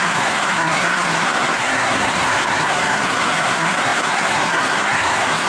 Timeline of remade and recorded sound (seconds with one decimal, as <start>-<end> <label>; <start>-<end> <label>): 0.0-5.5 remade